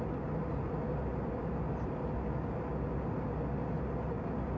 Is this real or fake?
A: real